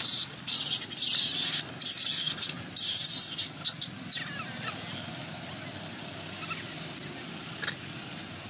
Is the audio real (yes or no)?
yes